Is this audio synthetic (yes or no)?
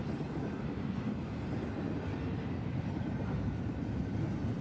no